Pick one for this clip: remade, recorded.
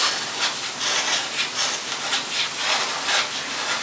recorded